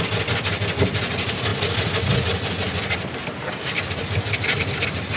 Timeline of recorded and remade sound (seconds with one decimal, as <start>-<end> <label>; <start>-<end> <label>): 0.0-5.2 recorded